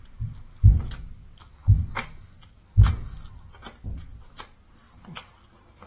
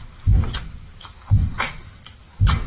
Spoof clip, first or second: second